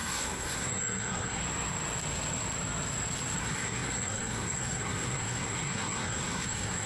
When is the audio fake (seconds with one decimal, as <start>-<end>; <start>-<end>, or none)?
0.0-1.4; 3.4-6.9